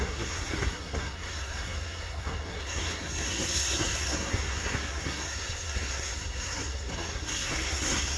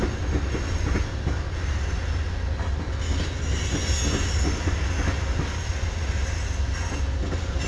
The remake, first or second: first